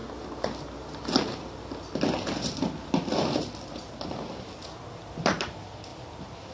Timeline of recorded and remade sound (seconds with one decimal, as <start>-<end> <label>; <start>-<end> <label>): 0.0-6.5 recorded